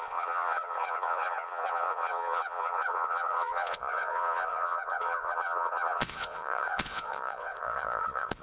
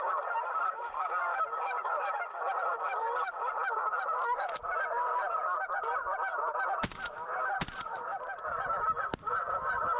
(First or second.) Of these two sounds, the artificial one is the first